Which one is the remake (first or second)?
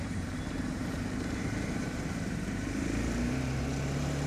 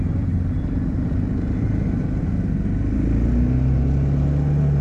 first